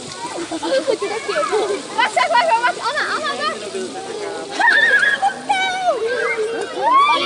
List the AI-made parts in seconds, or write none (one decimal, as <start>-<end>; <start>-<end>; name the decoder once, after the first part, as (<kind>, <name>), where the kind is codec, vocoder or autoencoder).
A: 0.4-0.9 (autoencoder, DAC-VAE)